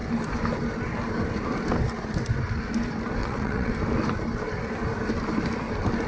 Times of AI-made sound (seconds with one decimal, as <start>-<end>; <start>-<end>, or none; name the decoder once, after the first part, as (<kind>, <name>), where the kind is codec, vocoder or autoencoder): 3.2-3.7 (vocoder, WaveNeXt)